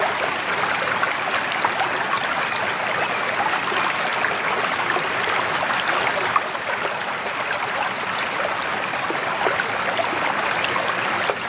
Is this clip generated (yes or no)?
no